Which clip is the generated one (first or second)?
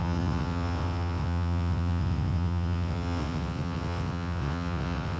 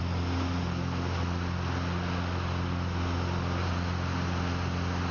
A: first